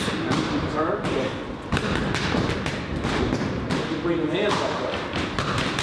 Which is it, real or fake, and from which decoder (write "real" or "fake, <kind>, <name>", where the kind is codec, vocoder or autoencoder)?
real